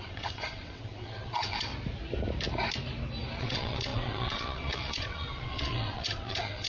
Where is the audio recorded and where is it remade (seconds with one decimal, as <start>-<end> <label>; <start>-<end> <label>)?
0.0-1.7 remade; 1.7-3.4 recorded; 3.4-6.7 remade

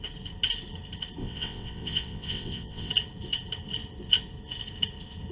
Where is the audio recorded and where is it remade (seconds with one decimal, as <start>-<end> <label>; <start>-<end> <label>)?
0.0-1.2 recorded; 1.2-2.9 remade; 2.9-5.3 recorded

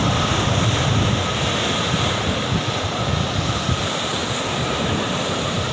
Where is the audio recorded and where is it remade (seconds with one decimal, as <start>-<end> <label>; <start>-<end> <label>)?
0.0-5.7 recorded

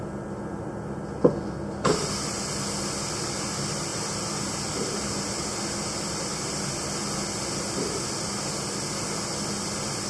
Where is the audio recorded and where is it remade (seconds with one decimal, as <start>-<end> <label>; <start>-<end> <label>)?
0.0-10.1 recorded

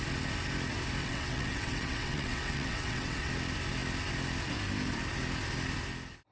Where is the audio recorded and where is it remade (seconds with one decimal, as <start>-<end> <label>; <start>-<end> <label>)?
0.0-1.0 recorded; 1.0-3.3 remade; 3.3-6.3 recorded

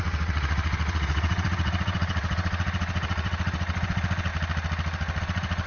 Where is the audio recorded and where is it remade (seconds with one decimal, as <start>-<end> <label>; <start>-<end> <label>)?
0.0-4.3 remade; 4.3-5.2 recorded; 5.2-5.7 remade

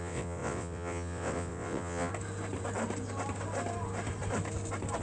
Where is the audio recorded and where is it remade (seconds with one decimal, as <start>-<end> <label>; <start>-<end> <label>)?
0.0-2.1 remade; 2.1-5.0 recorded